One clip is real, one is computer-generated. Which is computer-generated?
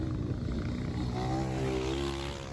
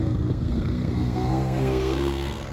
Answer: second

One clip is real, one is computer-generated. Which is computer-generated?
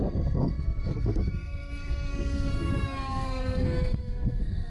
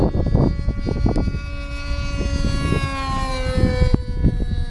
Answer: first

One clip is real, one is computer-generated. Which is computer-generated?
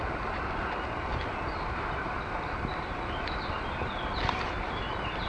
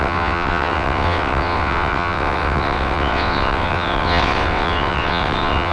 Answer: second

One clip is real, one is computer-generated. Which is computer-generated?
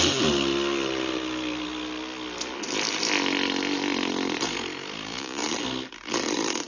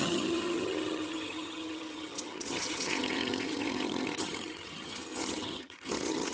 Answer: second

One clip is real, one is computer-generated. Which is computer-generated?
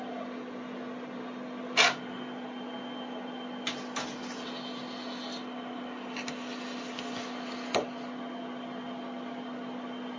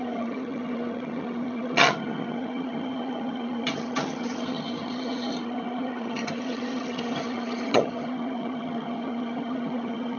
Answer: second